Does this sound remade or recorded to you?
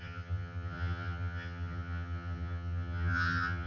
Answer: remade